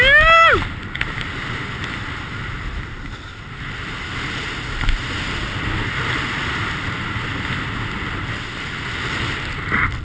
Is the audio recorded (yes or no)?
yes